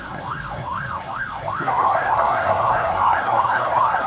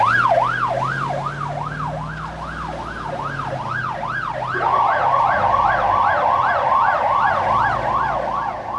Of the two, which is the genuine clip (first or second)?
second